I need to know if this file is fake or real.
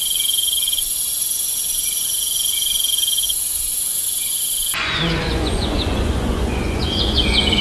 fake